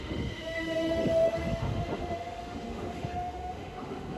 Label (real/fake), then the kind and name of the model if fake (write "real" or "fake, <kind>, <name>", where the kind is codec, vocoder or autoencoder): fake, autoencoder, DAC-VAE